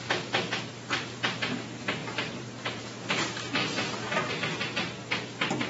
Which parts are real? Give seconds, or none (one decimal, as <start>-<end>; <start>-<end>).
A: 0.0-2.0; 2.8-3.6; 4.3-5.7